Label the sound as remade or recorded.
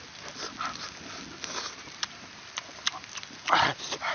recorded